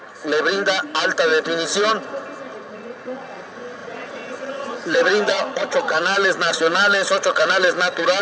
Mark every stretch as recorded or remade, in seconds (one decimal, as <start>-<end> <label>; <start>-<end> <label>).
0.0-2.7 recorded; 2.7-3.4 remade; 3.4-3.8 recorded; 3.8-8.2 remade